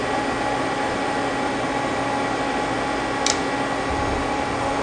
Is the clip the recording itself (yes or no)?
yes